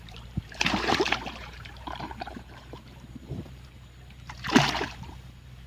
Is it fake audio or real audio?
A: fake